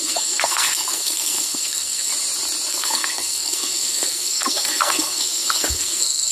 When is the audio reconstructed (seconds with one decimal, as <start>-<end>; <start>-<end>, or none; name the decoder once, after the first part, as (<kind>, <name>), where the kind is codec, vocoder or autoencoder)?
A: 0.0-2.1 (codec, SNAC); 2.7-6.3

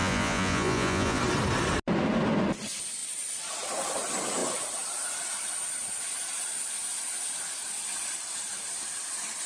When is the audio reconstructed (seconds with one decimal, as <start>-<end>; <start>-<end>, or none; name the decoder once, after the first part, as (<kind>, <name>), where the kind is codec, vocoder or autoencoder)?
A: 0.0-1.2 (vocoder, Vocos)

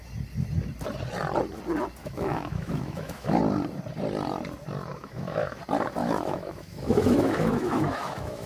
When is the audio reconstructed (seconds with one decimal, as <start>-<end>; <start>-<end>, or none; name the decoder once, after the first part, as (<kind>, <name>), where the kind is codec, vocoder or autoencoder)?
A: 2.0-3.4 (autoencoder, DAC-VAE); 4.9-5.6; 6.0-8.5

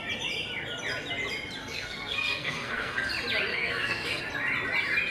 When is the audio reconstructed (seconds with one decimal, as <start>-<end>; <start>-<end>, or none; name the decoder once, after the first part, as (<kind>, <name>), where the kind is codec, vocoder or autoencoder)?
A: 1.6-3.1 (codec, SNAC); 3.5-4.2

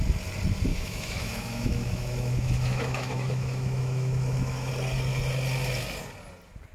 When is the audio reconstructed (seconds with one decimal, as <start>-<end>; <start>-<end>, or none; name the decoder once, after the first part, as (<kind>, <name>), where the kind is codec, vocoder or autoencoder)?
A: 0.7-4.7 (autoencoder, DAC-VAE)

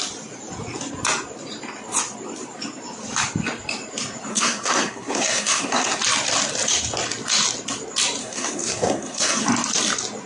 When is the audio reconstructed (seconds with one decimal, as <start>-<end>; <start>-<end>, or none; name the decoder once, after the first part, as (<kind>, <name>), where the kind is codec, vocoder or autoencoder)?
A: 4.3-6.0 (codec, SNAC); 8.2-9.4

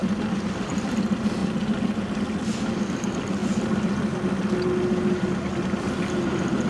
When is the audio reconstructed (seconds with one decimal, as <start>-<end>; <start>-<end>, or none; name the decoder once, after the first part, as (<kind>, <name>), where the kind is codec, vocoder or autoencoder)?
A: none

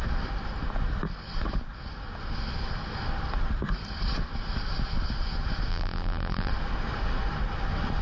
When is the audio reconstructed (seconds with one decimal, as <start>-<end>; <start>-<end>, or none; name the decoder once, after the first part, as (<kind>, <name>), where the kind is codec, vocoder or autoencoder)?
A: 5.7-6.5 (vocoder, BigVGAN v2)